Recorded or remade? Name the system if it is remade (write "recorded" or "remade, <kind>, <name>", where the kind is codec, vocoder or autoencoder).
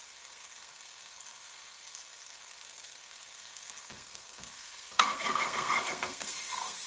remade, codec, SNAC